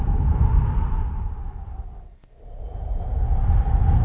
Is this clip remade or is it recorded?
recorded